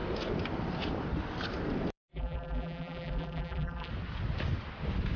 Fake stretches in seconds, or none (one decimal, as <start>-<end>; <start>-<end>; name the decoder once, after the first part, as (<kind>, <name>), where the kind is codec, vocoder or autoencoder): 2.1-3.9 (vocoder, BigVGAN v2)